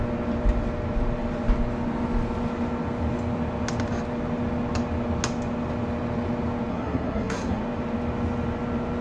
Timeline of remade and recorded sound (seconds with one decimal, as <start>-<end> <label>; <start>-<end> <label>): 0.0-6.7 recorded; 6.7-7.6 remade; 7.6-9.0 recorded